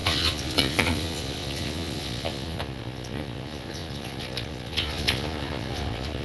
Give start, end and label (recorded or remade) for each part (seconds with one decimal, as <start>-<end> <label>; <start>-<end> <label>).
0.0-6.2 remade